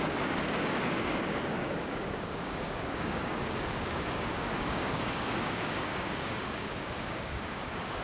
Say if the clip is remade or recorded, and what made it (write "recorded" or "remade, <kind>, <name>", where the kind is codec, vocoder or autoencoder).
remade, codec, DAC